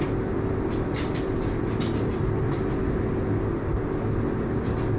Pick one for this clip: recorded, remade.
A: recorded